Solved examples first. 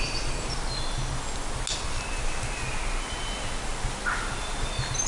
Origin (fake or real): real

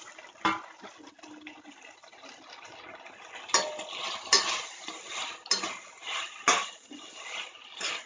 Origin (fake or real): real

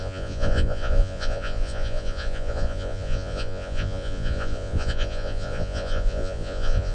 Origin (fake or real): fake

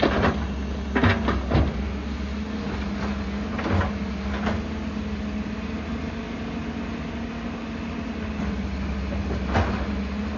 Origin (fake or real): real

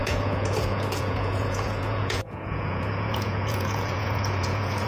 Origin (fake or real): fake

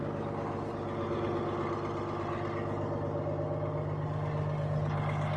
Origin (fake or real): real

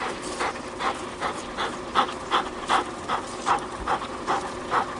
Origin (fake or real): real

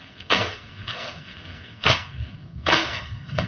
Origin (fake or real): fake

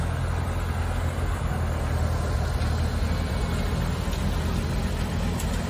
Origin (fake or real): real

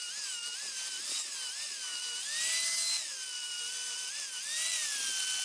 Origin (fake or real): real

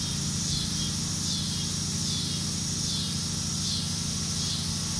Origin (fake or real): real